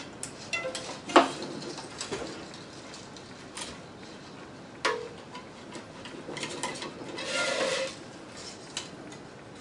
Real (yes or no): yes